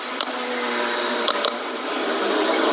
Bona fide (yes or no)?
yes